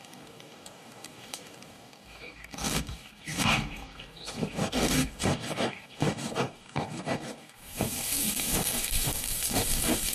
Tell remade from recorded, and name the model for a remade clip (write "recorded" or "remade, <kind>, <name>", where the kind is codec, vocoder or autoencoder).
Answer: remade, codec, DAC